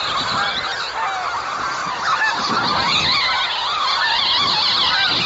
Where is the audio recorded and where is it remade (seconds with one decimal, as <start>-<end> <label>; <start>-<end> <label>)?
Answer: 0.0-5.3 recorded